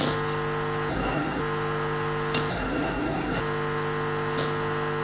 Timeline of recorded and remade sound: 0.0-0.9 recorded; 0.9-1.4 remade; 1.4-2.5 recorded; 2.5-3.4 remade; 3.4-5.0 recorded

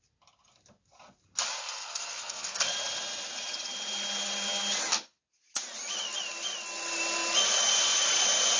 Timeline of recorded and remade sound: 0.0-1.6 recorded; 1.6-2.7 remade; 2.7-8.6 recorded

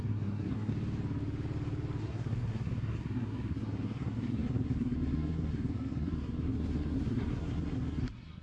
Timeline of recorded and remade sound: 0.0-0.7 remade; 0.7-2.0 recorded; 2.0-8.4 remade

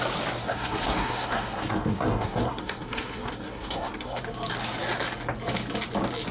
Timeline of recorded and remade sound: 0.0-0.4 recorded; 0.4-4.2 remade; 4.2-6.3 recorded